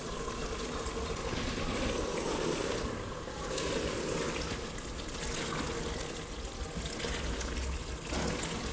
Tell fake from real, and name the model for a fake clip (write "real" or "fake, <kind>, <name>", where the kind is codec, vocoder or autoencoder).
real